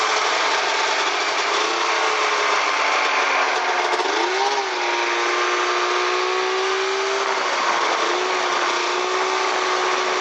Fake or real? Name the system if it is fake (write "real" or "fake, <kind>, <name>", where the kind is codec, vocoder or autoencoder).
real